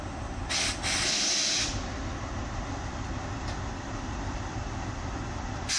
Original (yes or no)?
yes